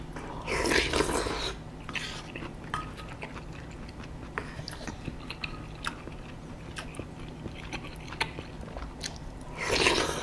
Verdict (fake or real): real